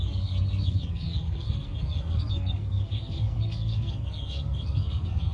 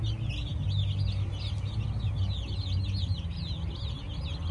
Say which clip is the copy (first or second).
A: first